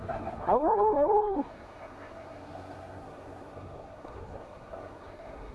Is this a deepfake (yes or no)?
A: yes